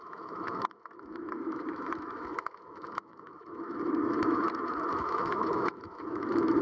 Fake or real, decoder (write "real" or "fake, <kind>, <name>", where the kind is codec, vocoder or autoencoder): fake, autoencoder, DAC-VAE